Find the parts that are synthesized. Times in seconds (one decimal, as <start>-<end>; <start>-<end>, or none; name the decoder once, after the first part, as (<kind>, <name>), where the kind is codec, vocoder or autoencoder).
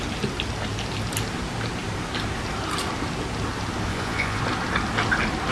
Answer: 3.9-4.4 (vocoder, Vocos)